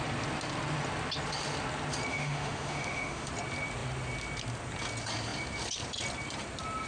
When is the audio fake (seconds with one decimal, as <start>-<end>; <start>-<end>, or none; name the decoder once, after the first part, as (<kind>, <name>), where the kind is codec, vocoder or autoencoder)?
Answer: 2.1-3.3 (autoencoder, DAC-VAE)

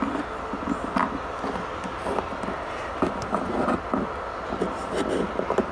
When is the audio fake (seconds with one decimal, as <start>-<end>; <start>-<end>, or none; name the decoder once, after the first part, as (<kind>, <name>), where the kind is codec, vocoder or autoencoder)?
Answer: none